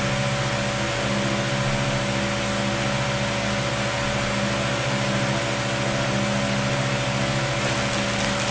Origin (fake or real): real